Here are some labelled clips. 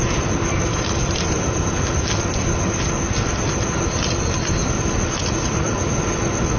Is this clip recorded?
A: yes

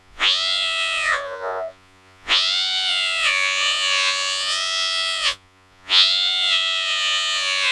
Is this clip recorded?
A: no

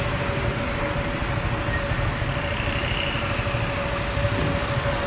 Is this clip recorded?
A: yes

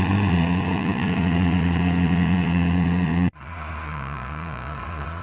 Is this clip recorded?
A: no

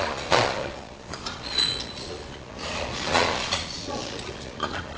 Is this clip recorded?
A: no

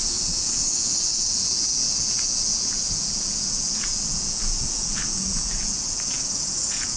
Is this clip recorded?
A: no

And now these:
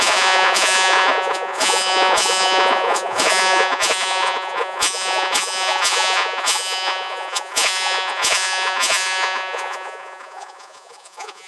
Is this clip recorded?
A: no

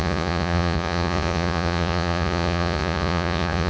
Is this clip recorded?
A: no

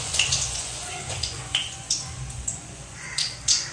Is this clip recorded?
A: no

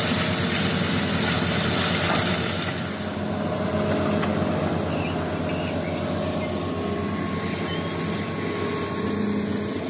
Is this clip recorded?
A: yes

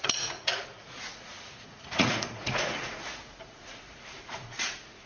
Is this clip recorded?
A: no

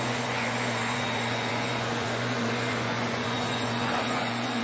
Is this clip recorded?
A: no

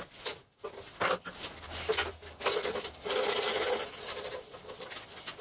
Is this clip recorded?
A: yes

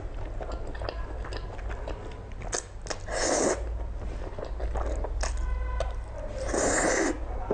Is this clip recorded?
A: yes